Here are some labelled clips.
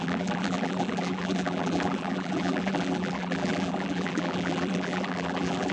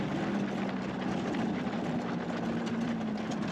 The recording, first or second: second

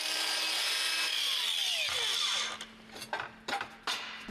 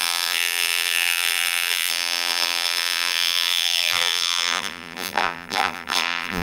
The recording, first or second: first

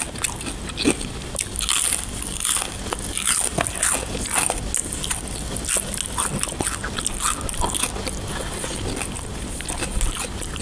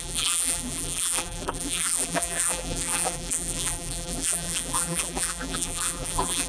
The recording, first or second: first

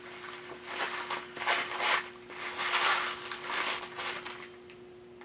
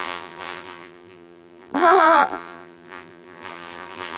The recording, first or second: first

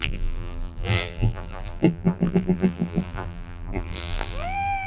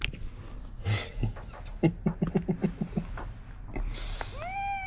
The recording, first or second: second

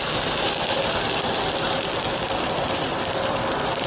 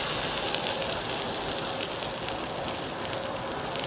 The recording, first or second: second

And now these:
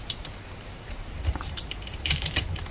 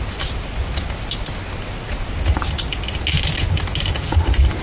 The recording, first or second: second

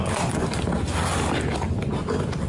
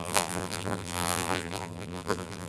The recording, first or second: first